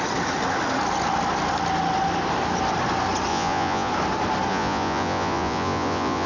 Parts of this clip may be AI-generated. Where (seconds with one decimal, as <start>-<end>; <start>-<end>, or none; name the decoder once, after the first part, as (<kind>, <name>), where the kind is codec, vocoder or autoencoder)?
3.3-3.9 (vocoder, Vocos); 4.5-6.3